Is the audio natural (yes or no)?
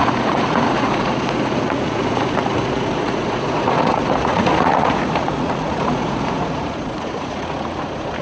no